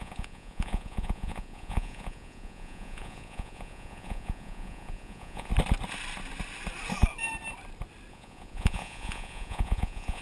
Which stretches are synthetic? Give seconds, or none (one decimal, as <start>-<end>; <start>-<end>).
0.0-5.5; 8.1-10.2